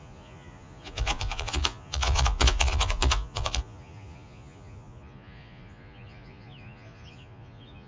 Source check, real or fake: fake